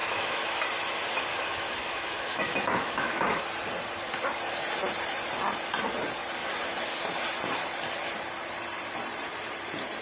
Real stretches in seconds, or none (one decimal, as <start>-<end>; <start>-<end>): 0.6-1.3; 3.4-10.0